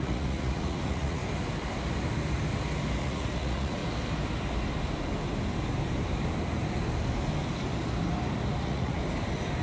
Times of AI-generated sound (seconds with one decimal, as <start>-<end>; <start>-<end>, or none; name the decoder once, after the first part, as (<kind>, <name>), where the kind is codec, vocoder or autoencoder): 0.0-1.2 (vocoder, Vocos); 3.0-3.8; 8.6-9.0